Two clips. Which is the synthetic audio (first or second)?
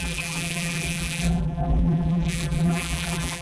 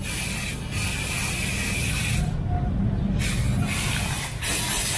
first